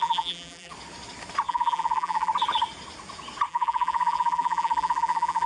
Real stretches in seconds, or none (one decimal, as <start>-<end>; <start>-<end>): 0.7-1.5; 2.3-3.5